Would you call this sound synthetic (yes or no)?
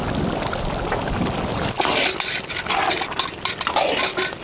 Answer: no